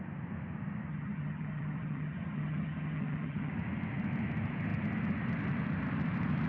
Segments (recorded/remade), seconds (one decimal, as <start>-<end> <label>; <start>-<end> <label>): 0.0-0.9 recorded; 0.9-3.5 remade; 3.5-6.5 recorded